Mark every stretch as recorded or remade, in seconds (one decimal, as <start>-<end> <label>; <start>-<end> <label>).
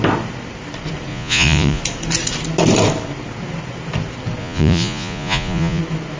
0.0-1.1 recorded; 1.1-1.8 remade; 1.8-4.4 recorded; 4.4-5.8 remade; 5.8-6.2 recorded